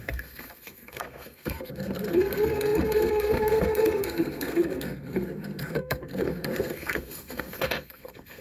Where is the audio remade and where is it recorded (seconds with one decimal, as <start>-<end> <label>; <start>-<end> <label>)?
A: 0.0-8.4 remade